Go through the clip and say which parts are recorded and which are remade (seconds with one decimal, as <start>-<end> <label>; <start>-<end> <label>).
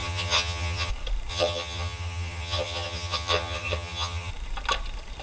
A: 0.0-0.9 remade; 0.9-1.3 recorded; 1.3-4.3 remade; 4.3-5.2 recorded